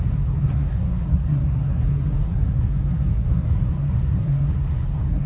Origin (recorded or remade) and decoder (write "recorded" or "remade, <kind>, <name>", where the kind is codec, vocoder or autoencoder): remade, codec, SNAC